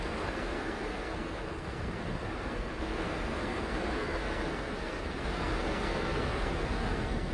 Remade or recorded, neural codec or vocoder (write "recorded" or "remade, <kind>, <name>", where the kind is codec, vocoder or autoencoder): remade, codec, SNAC